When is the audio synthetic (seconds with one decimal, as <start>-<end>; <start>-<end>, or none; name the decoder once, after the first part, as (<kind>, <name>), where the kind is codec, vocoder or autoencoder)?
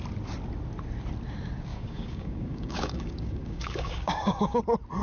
1.7-4.6 (codec, DAC)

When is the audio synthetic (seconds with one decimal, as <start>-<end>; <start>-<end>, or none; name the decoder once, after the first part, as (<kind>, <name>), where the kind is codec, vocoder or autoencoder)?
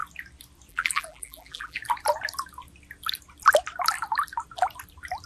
0.7-1.8 (vocoder, BigVGAN v2)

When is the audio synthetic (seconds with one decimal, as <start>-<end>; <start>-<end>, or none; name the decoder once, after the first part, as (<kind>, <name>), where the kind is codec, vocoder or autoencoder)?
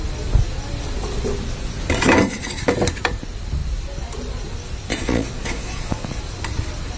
4.9-6.2 (vocoder, Vocos)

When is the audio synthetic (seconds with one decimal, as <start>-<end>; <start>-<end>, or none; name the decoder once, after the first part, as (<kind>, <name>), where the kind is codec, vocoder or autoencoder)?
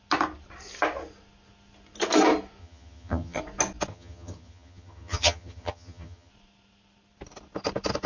2.6-3.4 (vocoder, HiFi-GAN); 3.9-6.3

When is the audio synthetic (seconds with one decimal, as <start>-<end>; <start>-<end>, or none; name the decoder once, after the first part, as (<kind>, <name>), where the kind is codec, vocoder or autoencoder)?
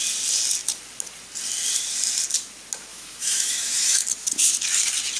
2.9-4.0 (autoencoder, DAC-VAE)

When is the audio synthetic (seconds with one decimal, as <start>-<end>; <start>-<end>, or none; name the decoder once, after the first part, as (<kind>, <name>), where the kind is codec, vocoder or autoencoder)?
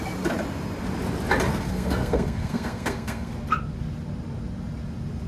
1.5-3.3 (codec, SNAC)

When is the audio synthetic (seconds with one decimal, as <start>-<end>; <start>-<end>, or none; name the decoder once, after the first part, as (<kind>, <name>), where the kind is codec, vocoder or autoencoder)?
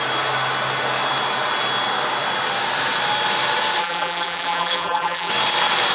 3.8-5.3 (vocoder, BigVGAN v2)